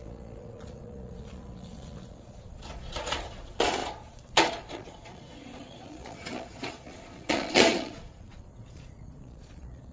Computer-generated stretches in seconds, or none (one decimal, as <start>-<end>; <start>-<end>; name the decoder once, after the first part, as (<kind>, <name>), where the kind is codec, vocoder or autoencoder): 0.0-9.9 (vocoder, Vocos)